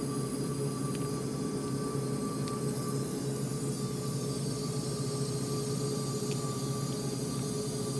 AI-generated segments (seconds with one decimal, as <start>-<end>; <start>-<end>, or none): none